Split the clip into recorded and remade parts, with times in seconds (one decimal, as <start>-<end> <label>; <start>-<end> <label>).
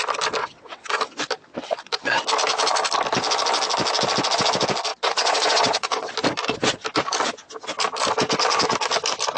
0.0-0.4 recorded; 0.4-1.1 remade; 1.1-1.6 recorded; 1.6-2.2 remade; 2.2-4.9 recorded; 4.9-6.1 remade; 6.1-9.4 recorded